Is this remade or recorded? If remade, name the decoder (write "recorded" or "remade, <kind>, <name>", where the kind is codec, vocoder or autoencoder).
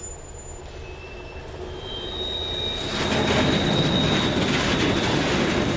recorded